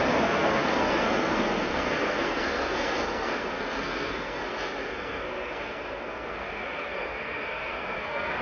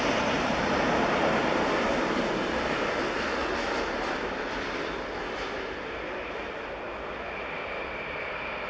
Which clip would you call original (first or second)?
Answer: second